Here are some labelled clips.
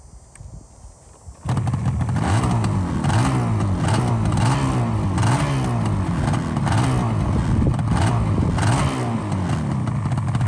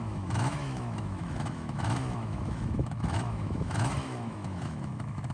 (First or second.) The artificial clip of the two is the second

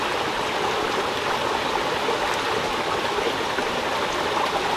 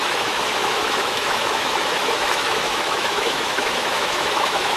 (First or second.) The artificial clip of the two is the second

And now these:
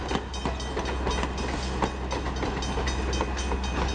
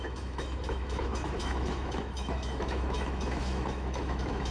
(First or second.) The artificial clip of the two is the second